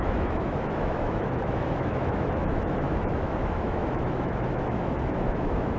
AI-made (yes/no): yes